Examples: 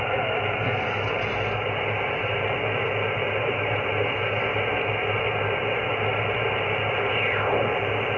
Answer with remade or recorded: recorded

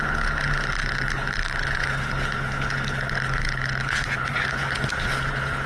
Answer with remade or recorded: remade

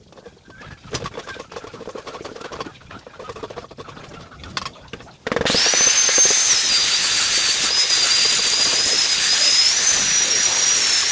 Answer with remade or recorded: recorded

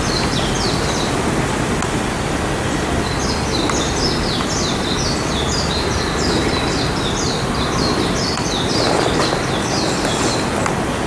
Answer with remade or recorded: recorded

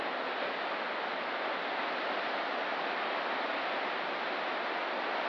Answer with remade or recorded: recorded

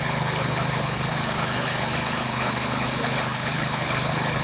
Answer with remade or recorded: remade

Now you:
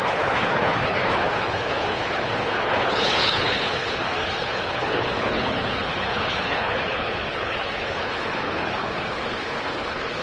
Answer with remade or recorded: remade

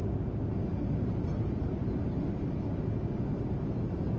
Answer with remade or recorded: recorded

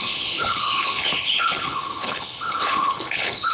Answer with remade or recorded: remade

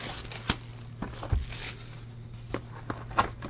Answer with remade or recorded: recorded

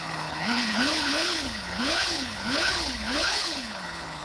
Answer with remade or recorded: remade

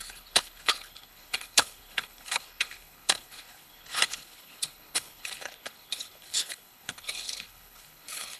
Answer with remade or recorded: remade